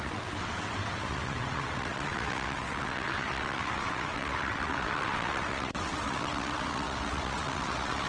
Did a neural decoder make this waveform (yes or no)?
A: yes